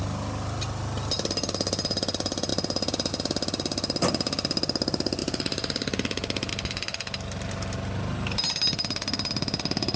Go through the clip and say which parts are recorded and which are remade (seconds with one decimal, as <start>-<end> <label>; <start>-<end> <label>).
0.0-5.2 recorded; 5.2-6.5 remade; 6.5-10.0 recorded

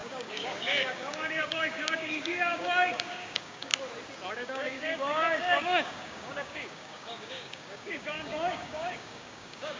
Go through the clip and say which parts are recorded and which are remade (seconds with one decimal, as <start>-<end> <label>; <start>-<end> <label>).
0.0-3.7 remade; 3.7-4.3 recorded; 4.3-9.8 remade

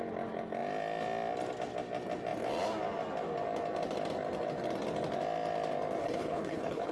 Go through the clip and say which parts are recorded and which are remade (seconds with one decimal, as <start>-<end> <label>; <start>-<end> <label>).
0.0-6.0 recorded; 6.0-6.9 remade

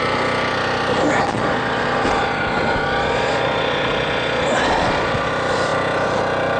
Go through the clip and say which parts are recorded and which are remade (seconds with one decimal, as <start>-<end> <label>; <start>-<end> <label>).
0.0-1.3 recorded; 1.3-5.3 remade; 5.3-6.6 recorded

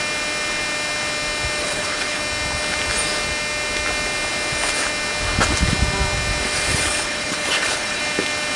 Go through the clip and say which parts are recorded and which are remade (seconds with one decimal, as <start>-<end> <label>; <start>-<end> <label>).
0.0-1.6 recorded; 1.6-2.2 remade; 2.2-6.7 recorded; 6.7-8.0 remade; 8.0-8.6 recorded

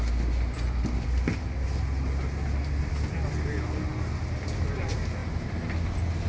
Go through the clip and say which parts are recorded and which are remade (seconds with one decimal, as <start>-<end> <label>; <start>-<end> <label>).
0.0-5.2 recorded; 5.2-5.7 remade; 5.7-6.3 recorded

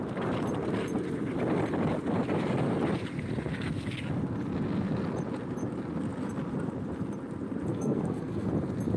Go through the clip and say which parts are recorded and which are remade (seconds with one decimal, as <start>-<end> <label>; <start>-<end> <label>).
0.0-7.7 recorded; 7.7-8.5 remade; 8.5-9.0 recorded